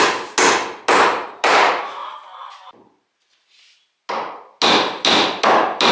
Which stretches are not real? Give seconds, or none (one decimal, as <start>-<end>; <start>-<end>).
none